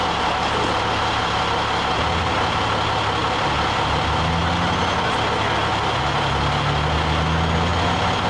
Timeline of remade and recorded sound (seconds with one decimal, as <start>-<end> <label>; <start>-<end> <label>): 0.0-8.3 recorded